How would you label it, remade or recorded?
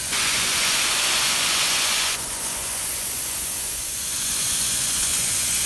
remade